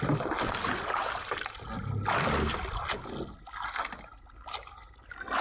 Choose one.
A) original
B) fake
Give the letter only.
A